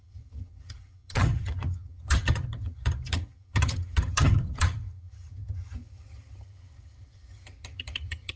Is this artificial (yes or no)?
yes